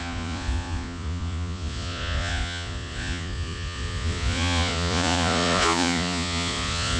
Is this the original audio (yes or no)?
no